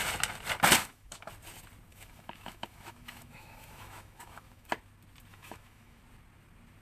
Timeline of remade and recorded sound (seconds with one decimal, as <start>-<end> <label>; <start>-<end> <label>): 0.0-0.8 recorded; 0.8-1.3 remade; 1.3-1.9 recorded; 1.9-4.7 remade; 4.7-5.3 recorded; 5.3-6.0 remade; 6.0-6.8 recorded